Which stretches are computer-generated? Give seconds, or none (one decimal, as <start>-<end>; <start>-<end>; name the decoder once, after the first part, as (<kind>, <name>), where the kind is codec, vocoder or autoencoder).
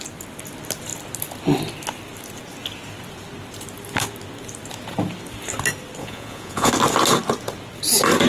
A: 6.0-6.7 (vocoder, Vocos)